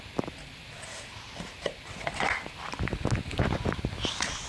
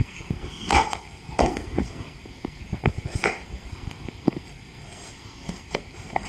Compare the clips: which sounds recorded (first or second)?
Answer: first